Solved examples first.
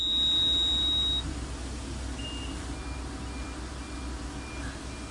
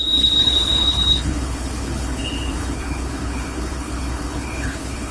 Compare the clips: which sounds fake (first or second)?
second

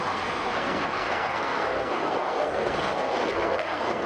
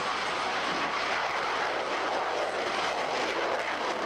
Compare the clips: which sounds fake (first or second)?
first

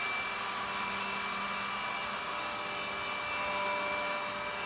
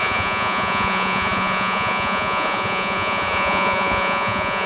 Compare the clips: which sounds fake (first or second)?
second